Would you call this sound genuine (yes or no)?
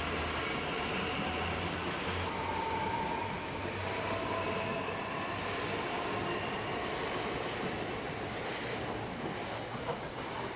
yes